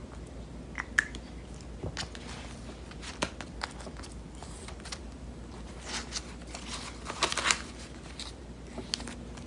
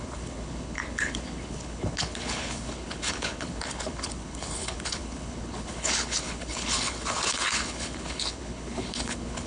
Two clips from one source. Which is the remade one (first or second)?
second